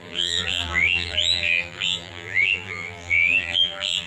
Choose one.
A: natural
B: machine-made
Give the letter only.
B